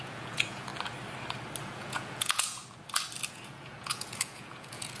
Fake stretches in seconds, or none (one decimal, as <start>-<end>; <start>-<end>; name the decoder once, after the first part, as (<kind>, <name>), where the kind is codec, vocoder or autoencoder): 0.0-0.7 (vocoder, Vocos); 1.6-2.6; 3.3-5.0

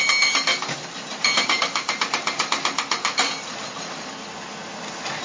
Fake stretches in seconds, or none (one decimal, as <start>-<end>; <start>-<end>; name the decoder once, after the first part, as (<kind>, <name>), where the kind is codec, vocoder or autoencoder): none

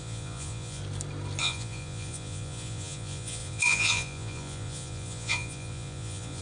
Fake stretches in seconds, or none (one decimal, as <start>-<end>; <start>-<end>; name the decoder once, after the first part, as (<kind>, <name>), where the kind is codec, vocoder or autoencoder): 0.0-0.8 (vocoder, Vocos); 1.4-6.4

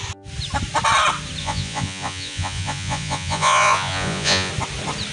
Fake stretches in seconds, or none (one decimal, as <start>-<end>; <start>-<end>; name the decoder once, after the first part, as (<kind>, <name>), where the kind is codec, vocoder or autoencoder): 1.4-4.5 (vocoder, Vocos)

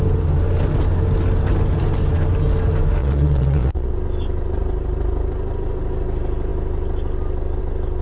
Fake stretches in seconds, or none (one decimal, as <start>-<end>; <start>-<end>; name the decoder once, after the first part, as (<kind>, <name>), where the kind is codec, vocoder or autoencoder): 3.0-3.9 (vocoder, Vocos)

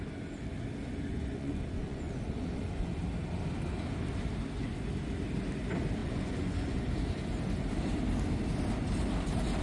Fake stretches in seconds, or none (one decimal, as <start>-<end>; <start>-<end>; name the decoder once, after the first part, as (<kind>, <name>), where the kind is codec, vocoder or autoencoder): 1.1-2.9 (vocoder, Vocos); 6.0-6.8